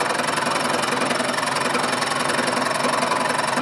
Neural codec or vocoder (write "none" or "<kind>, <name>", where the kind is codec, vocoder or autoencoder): none